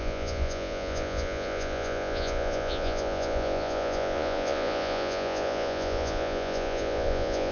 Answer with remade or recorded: remade